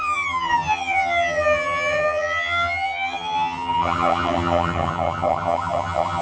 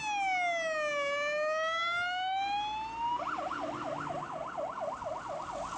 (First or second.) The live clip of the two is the second